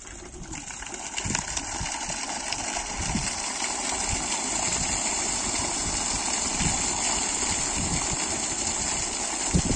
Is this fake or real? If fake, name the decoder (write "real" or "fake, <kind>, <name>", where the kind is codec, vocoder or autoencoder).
real